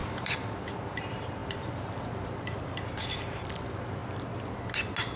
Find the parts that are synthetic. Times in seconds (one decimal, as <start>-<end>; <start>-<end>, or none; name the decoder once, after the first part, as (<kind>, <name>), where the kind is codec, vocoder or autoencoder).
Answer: 0.0-4.0 (vocoder, BigVGAN v2)

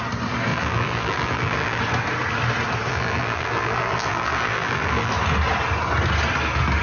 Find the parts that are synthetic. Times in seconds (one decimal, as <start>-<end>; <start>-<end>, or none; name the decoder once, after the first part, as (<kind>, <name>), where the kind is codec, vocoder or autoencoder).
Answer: 0.5-1.8 (vocoder, BigVGAN v2); 2.9-5.1

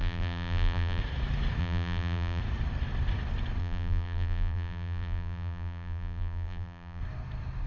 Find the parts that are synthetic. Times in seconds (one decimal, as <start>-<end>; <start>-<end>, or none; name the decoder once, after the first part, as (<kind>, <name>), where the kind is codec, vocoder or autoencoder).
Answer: 0.0-1.0 (vocoder, BigVGAN v2); 1.6-2.4; 3.6-7.0

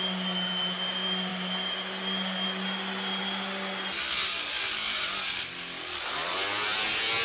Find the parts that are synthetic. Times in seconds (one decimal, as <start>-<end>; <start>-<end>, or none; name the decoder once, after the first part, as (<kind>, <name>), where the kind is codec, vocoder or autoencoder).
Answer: none

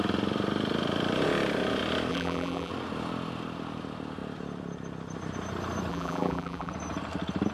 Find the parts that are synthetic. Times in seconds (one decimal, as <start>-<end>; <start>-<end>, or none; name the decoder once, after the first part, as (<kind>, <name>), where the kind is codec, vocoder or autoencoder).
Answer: 2.1-2.7 (vocoder, BigVGAN v2); 5.9-6.7

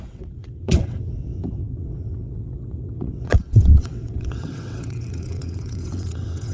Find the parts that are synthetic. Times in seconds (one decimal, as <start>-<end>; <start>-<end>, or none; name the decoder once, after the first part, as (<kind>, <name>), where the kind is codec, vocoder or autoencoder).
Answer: 0.0-6.5 (vocoder, WaveNeXt)